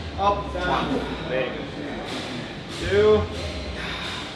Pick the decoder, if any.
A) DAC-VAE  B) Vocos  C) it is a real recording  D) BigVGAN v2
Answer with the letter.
C